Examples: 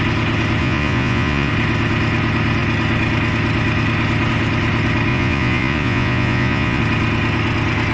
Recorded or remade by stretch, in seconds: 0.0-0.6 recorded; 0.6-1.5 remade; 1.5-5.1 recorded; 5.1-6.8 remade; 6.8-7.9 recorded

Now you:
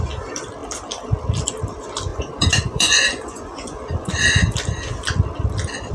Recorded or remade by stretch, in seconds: 0.0-2.1 recorded; 2.1-4.1 remade; 4.1-5.9 recorded

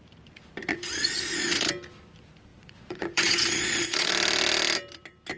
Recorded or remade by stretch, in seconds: 0.0-0.7 recorded; 0.7-1.7 remade; 1.7-2.5 recorded; 2.5-4.1 remade; 4.1-5.4 recorded